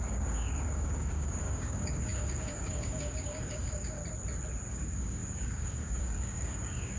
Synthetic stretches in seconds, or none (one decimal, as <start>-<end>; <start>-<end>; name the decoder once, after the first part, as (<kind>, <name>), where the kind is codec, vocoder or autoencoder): 0.0-4.0 (codec, DAC); 4.7-7.0